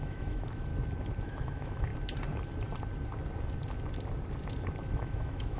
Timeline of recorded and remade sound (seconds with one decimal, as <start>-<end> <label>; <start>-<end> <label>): 0.0-0.7 remade; 0.7-1.2 recorded; 1.2-1.9 remade; 1.9-4.9 recorded; 4.9-5.6 remade